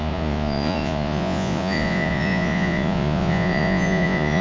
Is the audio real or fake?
fake